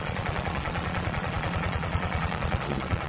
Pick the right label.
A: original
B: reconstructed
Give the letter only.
B